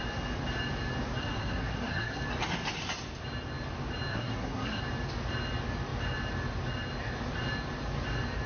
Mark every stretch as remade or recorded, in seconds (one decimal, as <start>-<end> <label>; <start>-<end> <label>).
0.0-1.2 recorded; 1.2-2.2 remade; 2.2-4.1 recorded; 4.1-4.8 remade; 4.8-8.5 recorded